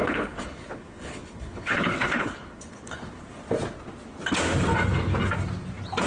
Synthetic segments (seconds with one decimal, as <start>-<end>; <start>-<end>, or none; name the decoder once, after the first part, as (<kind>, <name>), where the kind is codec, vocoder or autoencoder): 0.0-3.2 (codec, HILCodec)